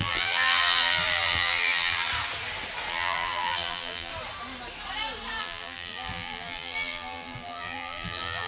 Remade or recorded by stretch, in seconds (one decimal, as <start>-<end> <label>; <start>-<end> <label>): 0.0-2.1 remade; 2.1-2.9 recorded; 2.9-4.1 remade; 4.1-5.4 recorded; 5.4-8.5 remade